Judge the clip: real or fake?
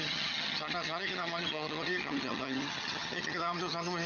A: fake